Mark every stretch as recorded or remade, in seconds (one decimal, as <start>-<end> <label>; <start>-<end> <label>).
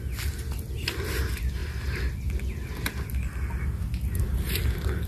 0.0-5.1 recorded